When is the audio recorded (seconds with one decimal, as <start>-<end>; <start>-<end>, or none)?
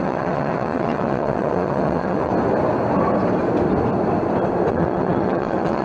2.3-4.7